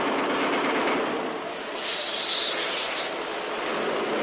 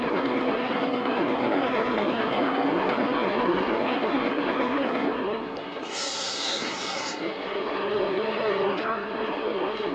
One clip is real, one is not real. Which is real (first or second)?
first